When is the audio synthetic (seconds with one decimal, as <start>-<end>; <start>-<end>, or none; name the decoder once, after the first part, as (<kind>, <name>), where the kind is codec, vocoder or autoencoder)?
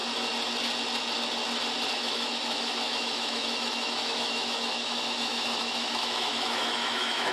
1.9-7.3 (autoencoder, DAC-VAE)